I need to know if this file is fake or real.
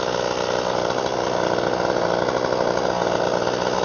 real